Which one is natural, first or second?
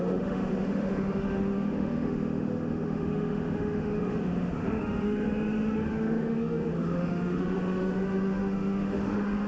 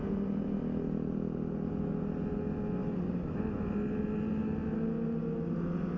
second